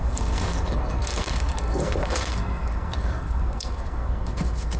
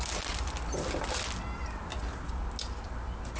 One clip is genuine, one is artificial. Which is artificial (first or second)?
first